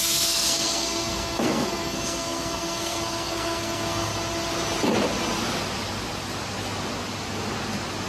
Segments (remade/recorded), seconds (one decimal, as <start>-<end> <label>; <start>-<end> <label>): 0.0-4.1 remade; 4.1-8.1 recorded